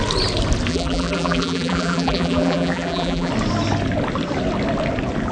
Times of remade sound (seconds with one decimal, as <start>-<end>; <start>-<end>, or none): 0.7-3.3